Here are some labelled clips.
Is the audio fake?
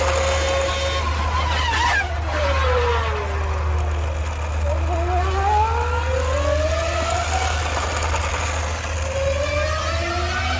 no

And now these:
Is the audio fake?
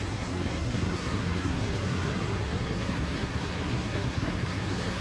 yes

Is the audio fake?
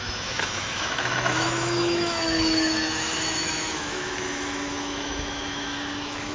yes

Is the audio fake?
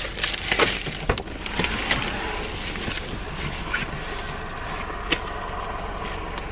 no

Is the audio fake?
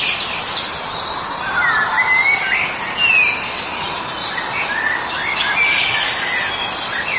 no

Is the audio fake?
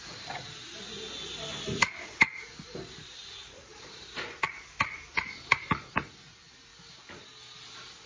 no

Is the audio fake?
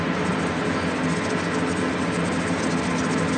no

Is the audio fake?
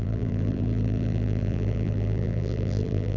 yes